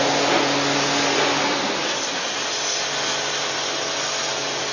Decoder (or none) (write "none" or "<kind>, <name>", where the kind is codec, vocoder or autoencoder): none